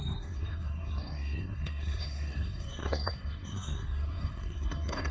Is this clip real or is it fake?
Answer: fake